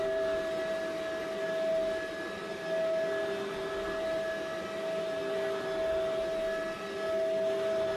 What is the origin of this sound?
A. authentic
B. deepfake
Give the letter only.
A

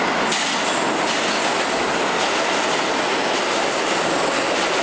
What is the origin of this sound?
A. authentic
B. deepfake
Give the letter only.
A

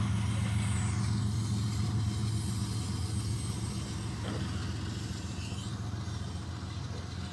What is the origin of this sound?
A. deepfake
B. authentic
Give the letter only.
B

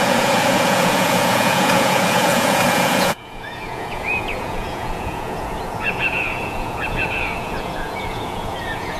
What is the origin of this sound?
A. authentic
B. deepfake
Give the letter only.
B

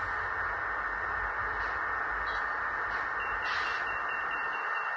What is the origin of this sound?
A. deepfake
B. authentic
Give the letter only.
B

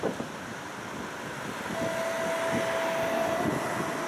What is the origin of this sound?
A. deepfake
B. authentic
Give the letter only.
B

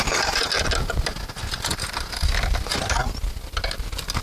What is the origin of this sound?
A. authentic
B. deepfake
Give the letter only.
A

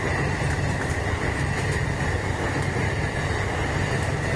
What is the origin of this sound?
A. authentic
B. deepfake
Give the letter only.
A